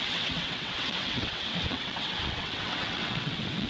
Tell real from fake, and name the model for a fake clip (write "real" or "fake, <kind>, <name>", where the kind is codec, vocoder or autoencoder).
fake, vocoder, WaveNeXt